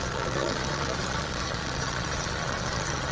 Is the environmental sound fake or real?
fake